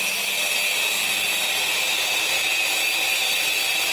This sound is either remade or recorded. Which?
recorded